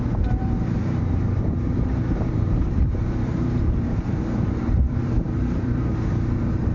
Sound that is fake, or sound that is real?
fake